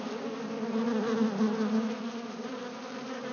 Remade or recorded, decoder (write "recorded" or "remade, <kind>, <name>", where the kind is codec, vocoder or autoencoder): recorded